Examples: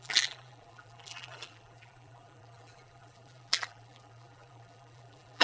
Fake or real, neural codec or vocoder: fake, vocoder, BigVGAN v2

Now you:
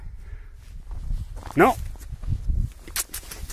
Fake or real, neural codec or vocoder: real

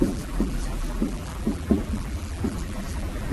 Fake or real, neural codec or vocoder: fake, vocoder, BigVGAN v2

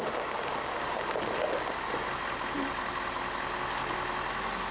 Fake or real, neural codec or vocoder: real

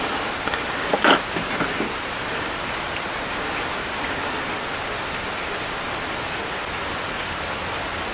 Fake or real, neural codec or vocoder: real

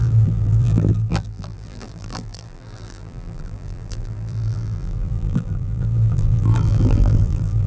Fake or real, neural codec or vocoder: fake, vocoder, BigVGAN v2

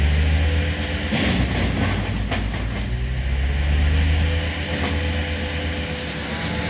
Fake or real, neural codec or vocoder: real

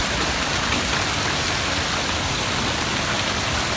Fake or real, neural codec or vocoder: real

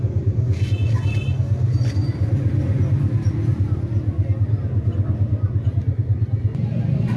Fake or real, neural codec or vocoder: real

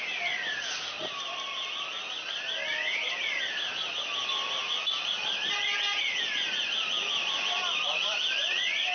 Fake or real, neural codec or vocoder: real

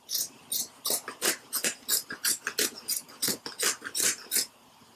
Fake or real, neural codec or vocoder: real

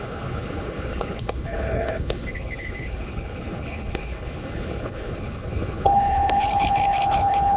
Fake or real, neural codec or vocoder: fake, codec, HILCodec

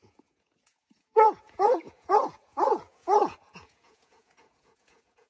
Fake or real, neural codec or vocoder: fake, vocoder, Vocos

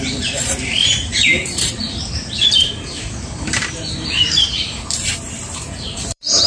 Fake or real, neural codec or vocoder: fake, vocoder, BigVGAN v2